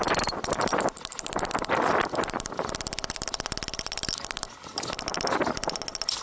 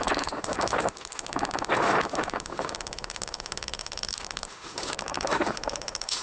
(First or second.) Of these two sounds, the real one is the first